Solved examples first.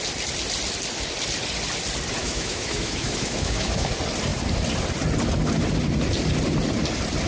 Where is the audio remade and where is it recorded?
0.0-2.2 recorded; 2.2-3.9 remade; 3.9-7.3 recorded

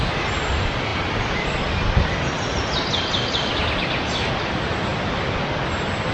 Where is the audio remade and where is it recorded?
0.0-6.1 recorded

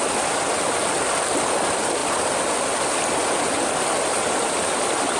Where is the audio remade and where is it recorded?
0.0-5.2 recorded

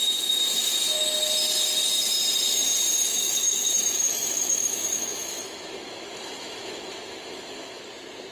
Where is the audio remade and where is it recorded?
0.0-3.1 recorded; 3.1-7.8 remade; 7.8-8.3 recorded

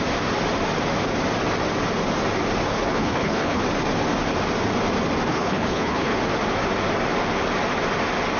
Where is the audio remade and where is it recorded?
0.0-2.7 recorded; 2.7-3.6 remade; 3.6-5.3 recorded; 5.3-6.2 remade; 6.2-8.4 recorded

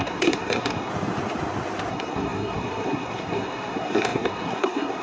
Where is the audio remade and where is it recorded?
0.0-0.9 remade; 0.9-1.9 recorded; 1.9-5.0 remade

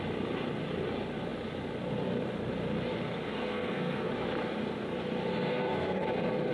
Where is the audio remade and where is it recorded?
0.0-3.3 recorded; 3.3-4.1 remade; 4.1-5.3 recorded; 5.3-6.0 remade; 6.0-6.5 recorded

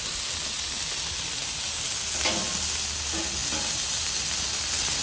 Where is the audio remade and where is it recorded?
0.0-5.0 recorded